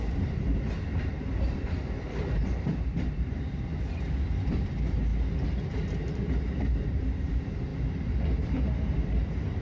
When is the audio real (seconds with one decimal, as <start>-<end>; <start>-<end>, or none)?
5.1-6.0